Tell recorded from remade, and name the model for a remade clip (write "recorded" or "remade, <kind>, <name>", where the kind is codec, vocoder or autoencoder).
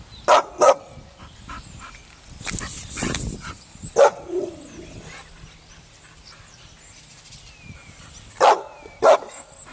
recorded